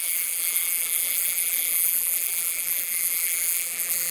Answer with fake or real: fake